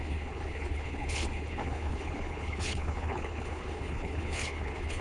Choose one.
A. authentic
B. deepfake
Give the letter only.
B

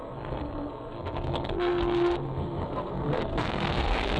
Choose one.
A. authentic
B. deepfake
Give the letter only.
B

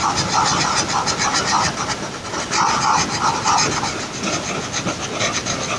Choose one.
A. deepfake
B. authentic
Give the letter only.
B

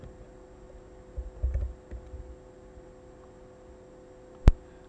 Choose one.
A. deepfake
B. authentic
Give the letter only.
B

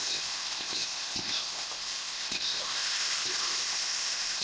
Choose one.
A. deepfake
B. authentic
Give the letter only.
A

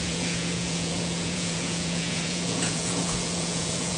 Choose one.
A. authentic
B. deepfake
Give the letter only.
B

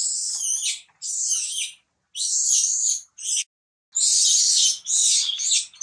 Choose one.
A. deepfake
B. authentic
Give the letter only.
B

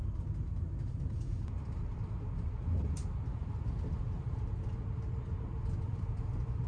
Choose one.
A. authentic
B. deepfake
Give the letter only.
A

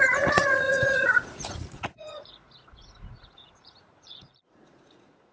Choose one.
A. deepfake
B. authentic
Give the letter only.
A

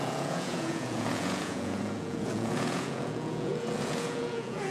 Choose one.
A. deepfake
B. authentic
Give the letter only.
A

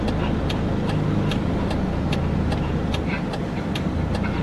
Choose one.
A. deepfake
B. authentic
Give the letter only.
A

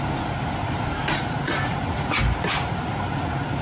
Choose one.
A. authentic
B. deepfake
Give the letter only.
A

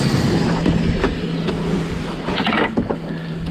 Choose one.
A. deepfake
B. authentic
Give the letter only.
B